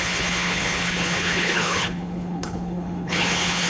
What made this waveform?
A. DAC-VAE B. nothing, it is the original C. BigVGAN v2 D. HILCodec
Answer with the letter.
D